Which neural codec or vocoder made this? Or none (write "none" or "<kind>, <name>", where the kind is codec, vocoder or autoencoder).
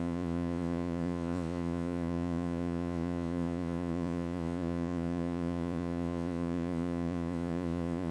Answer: vocoder, Vocos